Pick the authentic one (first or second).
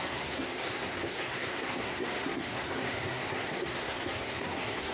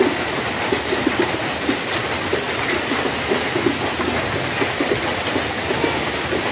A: second